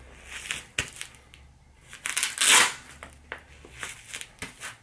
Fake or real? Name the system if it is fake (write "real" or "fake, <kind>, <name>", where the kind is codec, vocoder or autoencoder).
real